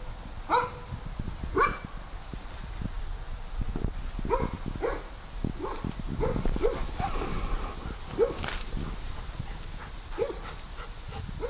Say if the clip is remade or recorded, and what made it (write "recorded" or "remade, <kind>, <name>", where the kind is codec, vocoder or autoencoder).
recorded